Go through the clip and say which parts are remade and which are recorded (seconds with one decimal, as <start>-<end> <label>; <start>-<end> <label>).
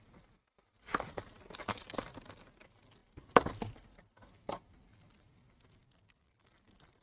0.0-7.0 recorded